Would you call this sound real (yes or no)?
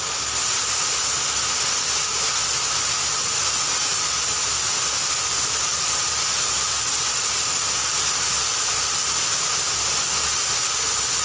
yes